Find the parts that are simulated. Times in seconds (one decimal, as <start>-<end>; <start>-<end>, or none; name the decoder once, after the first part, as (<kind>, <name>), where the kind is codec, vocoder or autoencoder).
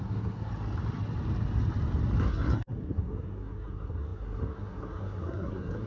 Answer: 0.0-0.5 (codec, SNAC); 2.2-5.9